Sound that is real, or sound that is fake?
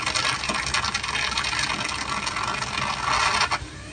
real